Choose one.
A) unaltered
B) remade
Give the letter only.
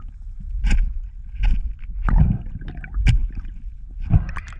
A